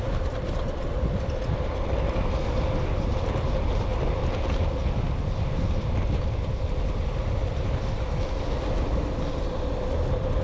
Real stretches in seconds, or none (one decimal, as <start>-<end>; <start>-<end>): 0.0-10.4